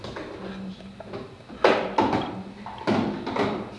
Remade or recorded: recorded